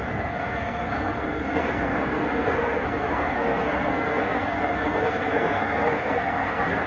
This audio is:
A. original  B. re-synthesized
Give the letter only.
B